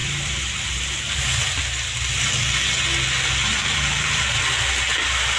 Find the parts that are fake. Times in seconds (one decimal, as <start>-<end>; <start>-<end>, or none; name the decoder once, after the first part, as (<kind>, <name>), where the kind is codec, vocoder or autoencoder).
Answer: 0.0-1.6 (vocoder, BigVGAN v2); 3.6-4.4